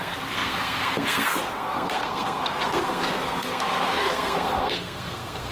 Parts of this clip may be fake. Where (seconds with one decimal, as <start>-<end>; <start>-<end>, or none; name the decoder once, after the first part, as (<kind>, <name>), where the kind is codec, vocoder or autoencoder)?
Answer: 0.0-5.5 (codec, SNAC)